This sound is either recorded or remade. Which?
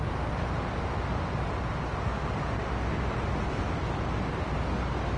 recorded